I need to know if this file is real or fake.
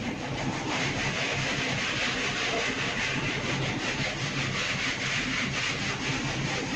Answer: fake